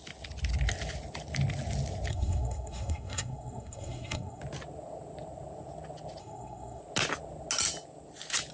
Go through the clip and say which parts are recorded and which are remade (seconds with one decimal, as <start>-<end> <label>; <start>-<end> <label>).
0.0-2.1 recorded; 2.1-4.4 remade; 4.4-6.2 recorded; 6.2-6.8 remade; 6.8-8.5 recorded